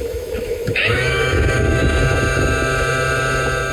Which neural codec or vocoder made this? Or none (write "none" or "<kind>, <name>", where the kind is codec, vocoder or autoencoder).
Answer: autoencoder, DAC-VAE